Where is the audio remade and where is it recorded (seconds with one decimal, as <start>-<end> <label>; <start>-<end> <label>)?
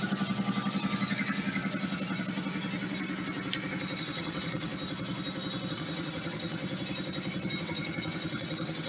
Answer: 0.0-4.0 recorded; 4.0-4.7 remade; 4.7-5.7 recorded; 5.7-6.6 remade; 6.6-7.6 recorded; 7.6-8.9 remade